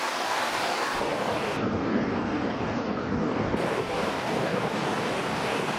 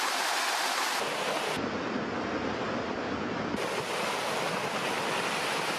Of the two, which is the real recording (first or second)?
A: second